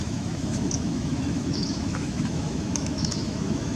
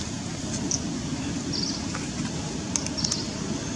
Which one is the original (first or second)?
second